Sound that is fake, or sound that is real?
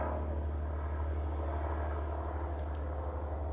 real